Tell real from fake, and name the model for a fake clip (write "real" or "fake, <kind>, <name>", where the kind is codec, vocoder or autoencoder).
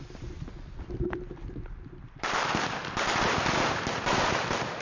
fake, vocoder, BigVGAN v2